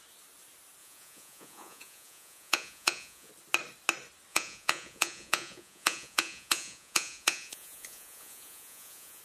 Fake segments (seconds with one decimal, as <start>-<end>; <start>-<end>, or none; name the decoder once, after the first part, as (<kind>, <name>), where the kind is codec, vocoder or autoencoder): 0.8-3.3 (vocoder, Vocos); 4.3-9.2